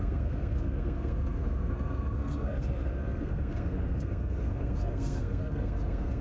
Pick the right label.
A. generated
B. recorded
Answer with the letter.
A